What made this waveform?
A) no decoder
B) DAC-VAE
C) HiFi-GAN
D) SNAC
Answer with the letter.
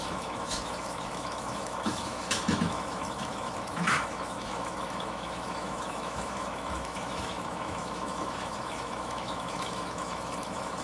B